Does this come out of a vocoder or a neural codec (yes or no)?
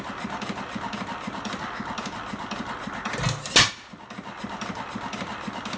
no